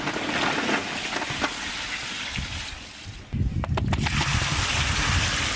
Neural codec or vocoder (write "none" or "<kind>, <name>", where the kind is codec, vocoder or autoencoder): none